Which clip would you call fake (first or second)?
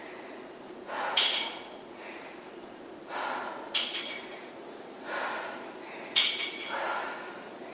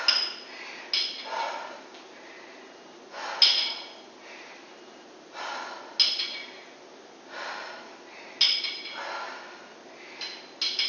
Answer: first